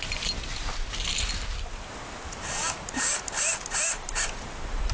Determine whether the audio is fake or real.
real